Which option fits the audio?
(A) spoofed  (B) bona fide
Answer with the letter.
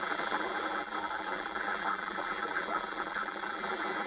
A